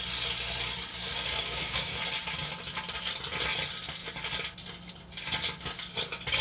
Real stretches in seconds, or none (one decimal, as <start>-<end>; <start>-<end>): 0.0-0.9; 2.0-6.4

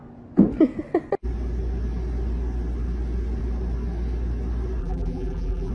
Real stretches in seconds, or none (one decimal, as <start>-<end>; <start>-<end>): 0.0-4.8

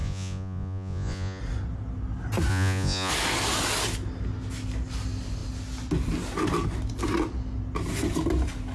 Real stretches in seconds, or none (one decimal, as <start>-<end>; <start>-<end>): 1.4-2.5; 3.1-8.7

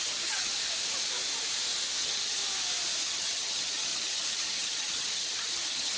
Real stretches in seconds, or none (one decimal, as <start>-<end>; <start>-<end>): 0.5-2.0; 2.4-3.0

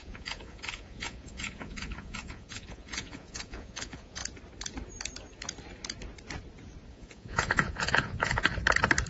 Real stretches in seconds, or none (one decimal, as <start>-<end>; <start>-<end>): 4.2-6.9; 8.5-9.1